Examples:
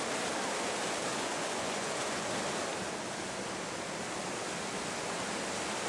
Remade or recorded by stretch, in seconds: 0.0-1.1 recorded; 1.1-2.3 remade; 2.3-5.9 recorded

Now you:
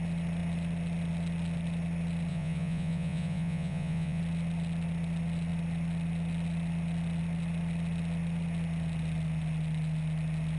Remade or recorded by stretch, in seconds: 0.0-2.3 recorded; 2.3-4.2 remade; 4.2-10.6 recorded

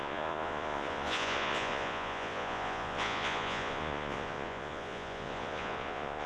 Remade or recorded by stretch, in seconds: 0.0-6.3 remade

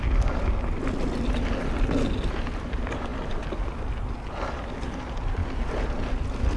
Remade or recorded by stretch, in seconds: 0.0-6.6 recorded

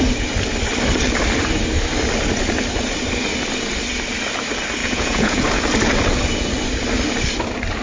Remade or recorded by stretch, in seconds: 0.0-4.8 recorded; 4.8-5.6 remade; 5.6-7.8 recorded